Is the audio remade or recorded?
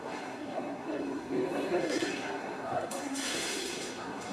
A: remade